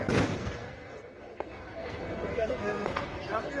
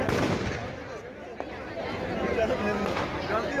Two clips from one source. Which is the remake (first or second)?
first